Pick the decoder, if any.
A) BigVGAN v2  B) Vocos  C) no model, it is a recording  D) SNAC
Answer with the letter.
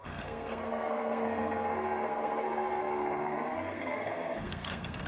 D